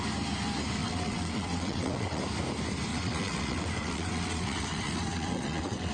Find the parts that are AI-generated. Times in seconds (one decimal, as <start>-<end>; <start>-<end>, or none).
0.8-2.2; 2.9-5.9